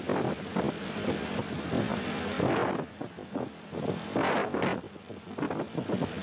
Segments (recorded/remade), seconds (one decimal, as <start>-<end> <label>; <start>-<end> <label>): 0.0-6.2 recorded